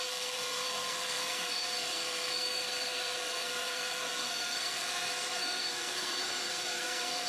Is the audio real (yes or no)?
no